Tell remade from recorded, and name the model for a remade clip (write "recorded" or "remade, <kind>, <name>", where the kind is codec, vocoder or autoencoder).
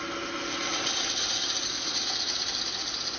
recorded